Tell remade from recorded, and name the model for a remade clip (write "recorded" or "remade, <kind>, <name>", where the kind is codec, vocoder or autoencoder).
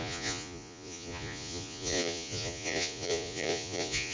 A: remade, vocoder, Vocos